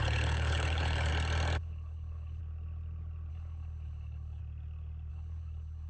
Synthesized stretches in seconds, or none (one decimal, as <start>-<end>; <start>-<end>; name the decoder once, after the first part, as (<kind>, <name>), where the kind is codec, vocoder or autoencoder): 0.0-1.1 (codec, HILCodec); 1.6-2.4; 3.3-4.4; 5.1-5.9